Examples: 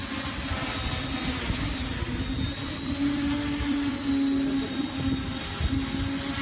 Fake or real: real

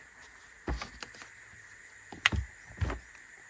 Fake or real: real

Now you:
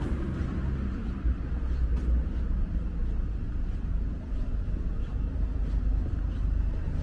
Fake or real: real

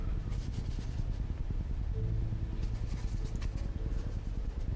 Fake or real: real